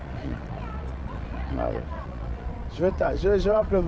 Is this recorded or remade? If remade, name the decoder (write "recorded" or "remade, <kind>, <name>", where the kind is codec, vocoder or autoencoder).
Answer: remade, vocoder, Vocos